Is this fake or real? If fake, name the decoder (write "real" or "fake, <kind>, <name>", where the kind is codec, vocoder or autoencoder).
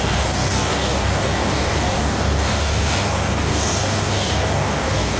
fake, codec, DAC